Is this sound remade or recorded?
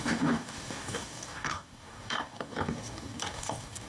remade